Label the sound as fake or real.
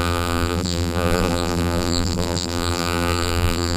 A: fake